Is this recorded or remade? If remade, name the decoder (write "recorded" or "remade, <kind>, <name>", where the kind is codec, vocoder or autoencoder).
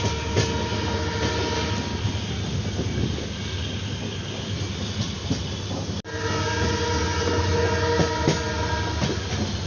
recorded